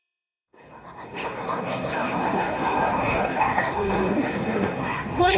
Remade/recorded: remade